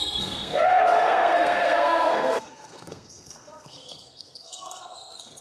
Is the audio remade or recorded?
remade